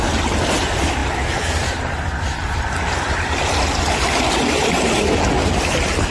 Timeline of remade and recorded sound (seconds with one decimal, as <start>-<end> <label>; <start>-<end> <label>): 0.0-1.0 recorded; 1.0-4.7 remade; 4.7-6.1 recorded